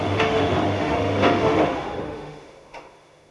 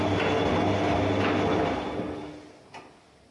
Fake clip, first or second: first